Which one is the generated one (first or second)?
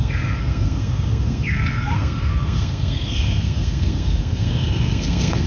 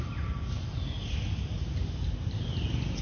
first